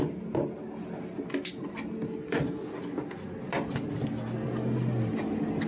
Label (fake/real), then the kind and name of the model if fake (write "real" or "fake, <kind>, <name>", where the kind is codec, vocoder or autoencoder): real